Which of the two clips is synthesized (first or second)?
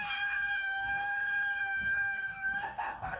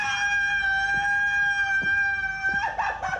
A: first